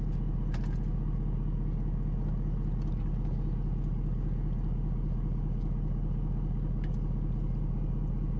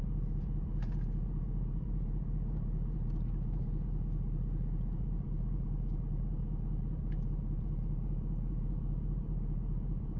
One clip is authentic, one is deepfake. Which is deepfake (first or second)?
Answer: second